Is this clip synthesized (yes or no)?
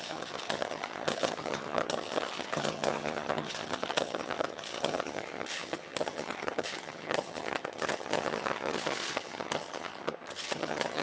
yes